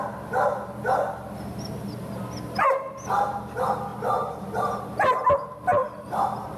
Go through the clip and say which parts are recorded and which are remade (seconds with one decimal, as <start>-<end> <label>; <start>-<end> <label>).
0.0-3.9 recorded; 3.9-5.2 remade; 5.2-5.7 recorded; 5.7-6.6 remade